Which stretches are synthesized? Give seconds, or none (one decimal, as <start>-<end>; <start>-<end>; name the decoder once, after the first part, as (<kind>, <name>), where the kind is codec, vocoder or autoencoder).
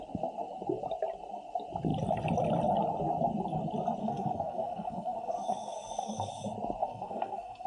4.0-6.3 (codec, SNAC); 6.8-7.7